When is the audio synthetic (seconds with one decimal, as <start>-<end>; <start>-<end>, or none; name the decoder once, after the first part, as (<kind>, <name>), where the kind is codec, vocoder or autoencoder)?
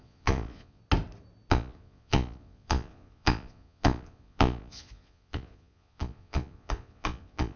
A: 0.0-0.8 (vocoder, Vocos); 1.5-7.6